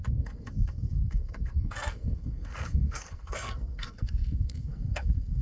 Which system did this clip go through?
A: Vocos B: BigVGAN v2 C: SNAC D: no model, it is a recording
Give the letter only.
C